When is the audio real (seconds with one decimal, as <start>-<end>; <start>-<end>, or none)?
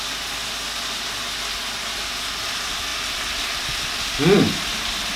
0.0-5.2